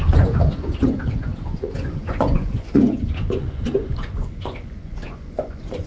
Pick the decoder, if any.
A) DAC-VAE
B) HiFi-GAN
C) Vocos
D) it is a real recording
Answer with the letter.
C